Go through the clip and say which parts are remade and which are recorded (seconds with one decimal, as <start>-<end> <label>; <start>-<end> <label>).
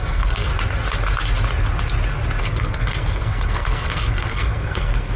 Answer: 0.0-0.5 remade; 0.5-2.4 recorded; 2.4-5.2 remade